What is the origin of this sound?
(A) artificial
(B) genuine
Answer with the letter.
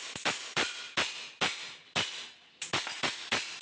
B